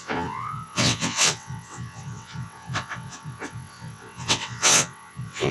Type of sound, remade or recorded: remade